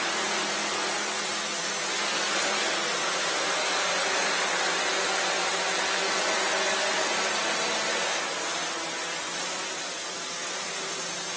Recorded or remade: recorded